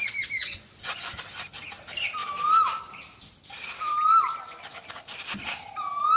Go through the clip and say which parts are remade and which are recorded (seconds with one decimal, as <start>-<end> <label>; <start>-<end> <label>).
0.0-0.4 recorded; 0.4-1.1 remade; 1.1-6.2 recorded